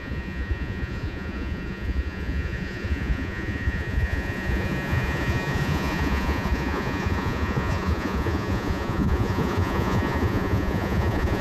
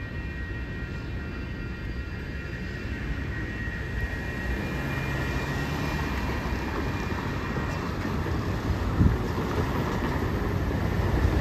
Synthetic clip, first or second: first